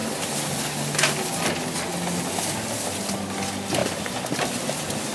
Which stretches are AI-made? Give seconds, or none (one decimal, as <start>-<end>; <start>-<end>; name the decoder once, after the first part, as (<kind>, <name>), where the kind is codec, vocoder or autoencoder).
3.8-5.1 (vocoder, BigVGAN v2)